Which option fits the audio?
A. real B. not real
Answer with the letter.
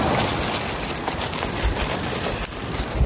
A